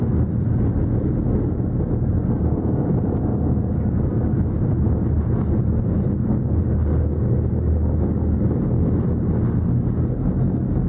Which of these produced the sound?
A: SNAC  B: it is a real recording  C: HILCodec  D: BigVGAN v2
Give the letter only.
B